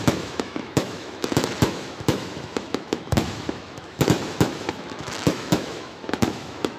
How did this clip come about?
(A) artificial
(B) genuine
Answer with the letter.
A